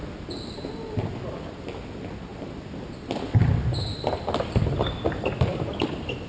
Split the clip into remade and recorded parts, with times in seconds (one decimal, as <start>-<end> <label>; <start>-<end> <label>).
0.0-1.6 remade; 1.6-2.3 recorded; 2.3-6.3 remade